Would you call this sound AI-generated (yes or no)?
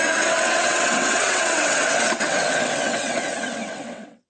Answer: yes